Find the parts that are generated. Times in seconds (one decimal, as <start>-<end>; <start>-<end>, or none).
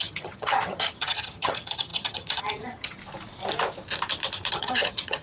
0.0-3.0; 4.5-5.2